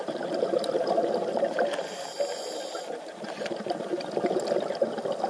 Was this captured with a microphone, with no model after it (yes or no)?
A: yes